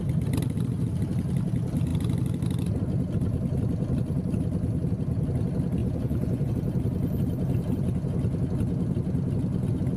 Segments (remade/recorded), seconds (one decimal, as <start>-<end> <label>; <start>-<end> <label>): 0.0-5.8 recorded; 5.8-6.5 remade; 6.5-10.0 recorded